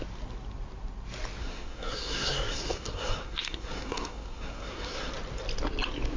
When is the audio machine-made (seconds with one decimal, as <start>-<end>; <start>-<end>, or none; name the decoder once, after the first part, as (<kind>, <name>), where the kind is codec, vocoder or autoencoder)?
1.4-5.1 (codec, SNAC)